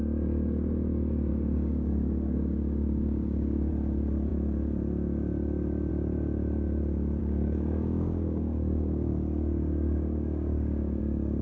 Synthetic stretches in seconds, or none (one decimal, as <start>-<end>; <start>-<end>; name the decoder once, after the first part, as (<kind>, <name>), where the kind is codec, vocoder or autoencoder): 1.3-3.7 (codec, DAC); 7.2-11.0